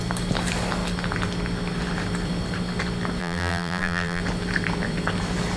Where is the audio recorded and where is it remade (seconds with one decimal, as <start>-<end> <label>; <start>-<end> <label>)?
0.0-3.2 recorded; 3.2-4.2 remade; 4.2-5.6 recorded